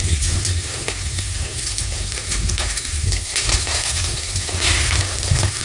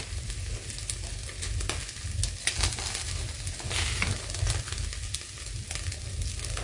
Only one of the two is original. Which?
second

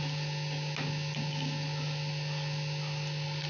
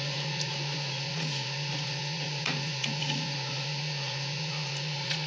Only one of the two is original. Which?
first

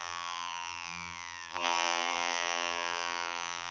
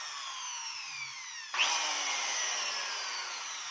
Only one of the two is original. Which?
second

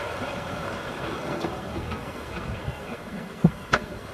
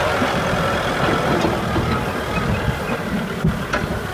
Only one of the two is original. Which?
second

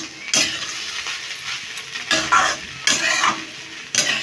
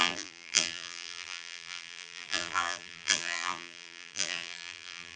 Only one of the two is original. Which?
first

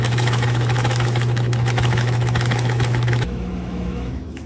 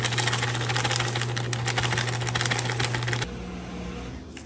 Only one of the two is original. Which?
second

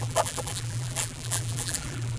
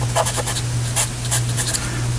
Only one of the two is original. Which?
second